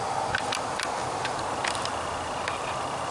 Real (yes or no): yes